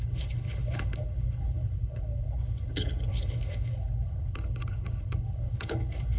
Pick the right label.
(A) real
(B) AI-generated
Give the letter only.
B